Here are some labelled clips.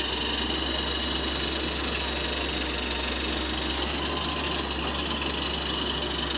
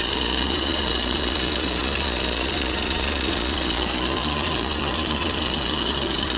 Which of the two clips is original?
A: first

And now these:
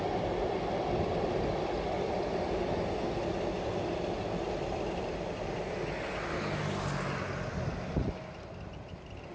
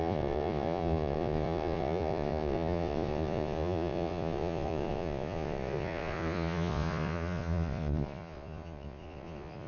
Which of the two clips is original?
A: first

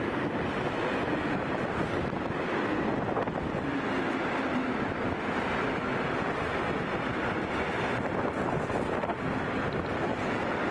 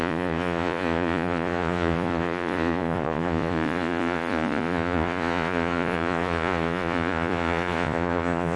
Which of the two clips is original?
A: first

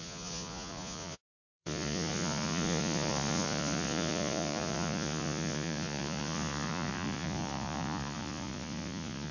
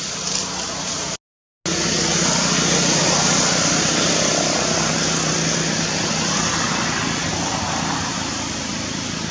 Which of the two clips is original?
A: second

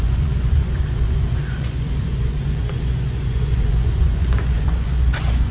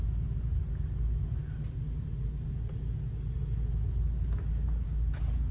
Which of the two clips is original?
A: second